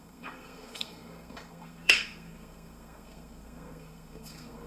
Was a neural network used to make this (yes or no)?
yes